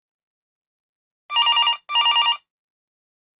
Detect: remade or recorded recorded